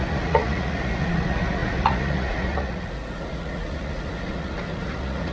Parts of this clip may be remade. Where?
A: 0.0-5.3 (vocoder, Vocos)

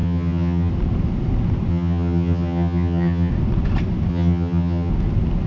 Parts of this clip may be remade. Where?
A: 0.0-0.7 (vocoder, HiFi-GAN); 1.7-3.3; 4.1-4.9

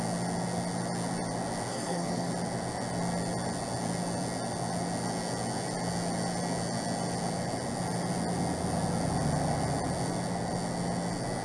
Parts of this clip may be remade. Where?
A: 1.7-2.3 (codec, SNAC)